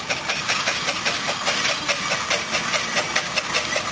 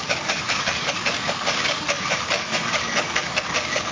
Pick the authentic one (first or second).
first